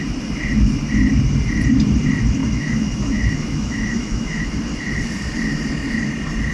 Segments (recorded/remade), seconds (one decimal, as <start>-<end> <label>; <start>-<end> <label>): 0.0-2.4 recorded; 2.4-4.5 remade; 4.5-6.5 recorded